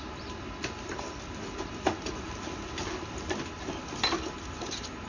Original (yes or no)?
yes